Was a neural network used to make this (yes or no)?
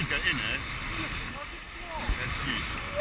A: no